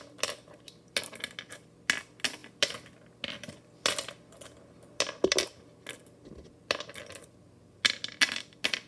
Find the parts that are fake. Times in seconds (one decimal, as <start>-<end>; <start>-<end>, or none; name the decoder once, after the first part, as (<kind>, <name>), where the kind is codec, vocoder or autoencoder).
none